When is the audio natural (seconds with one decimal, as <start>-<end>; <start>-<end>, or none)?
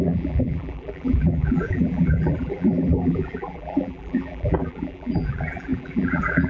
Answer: none